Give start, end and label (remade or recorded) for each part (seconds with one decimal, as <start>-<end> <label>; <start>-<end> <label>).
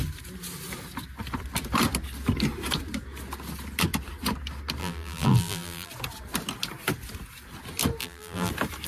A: 0.0-4.8 recorded; 4.8-5.9 remade; 5.9-8.0 recorded; 8.0-8.5 remade; 8.5-8.9 recorded